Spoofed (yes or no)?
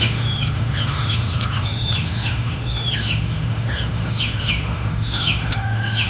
yes